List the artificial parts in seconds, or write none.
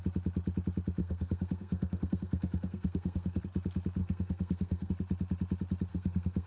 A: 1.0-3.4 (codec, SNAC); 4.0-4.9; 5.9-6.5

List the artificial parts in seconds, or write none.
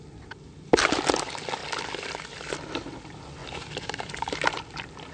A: 1.6-2.6 (vocoder, BigVGAN v2)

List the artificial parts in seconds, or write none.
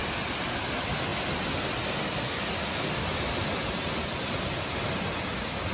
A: 0.0-0.6 (vocoder, BigVGAN v2)